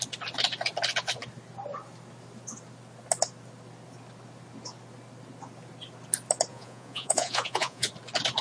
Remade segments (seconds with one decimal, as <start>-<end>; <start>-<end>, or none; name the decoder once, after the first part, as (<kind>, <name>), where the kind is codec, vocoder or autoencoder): 6.5-7.9 (vocoder, Vocos)